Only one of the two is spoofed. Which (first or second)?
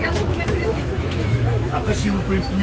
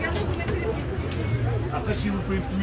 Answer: first